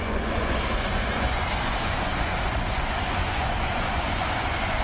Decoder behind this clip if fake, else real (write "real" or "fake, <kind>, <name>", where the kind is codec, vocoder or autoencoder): fake, vocoder, Vocos